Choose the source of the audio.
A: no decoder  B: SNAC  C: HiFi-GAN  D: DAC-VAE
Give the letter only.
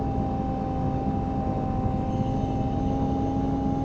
A